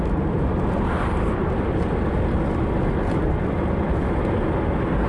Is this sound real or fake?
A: real